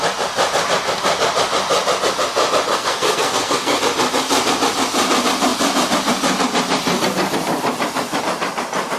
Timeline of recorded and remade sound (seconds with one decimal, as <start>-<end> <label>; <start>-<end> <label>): 0.0-2.7 recorded; 2.7-3.8 remade; 3.8-9.0 recorded